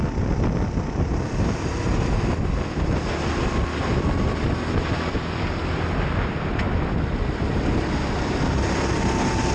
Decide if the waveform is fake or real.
real